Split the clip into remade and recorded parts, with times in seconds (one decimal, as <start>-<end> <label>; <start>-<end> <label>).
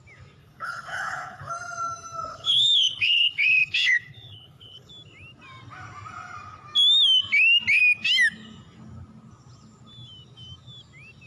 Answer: 0.0-0.4 recorded; 0.4-1.5 remade; 1.5-2.3 recorded; 2.3-4.9 remade; 4.9-11.3 recorded